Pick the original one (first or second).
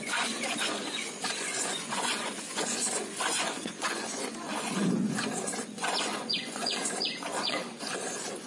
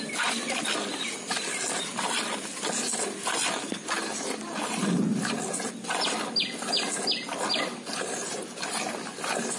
second